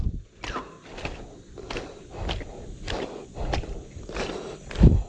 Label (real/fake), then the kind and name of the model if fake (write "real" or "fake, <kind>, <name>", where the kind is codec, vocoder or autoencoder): real